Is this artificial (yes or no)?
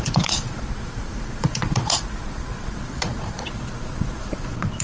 yes